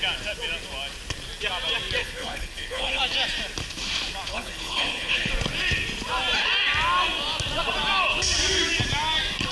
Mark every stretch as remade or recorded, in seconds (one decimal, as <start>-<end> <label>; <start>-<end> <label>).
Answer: 0.0-2.0 recorded; 2.0-3.0 remade; 3.0-4.3 recorded; 4.3-5.3 remade; 5.3-9.5 recorded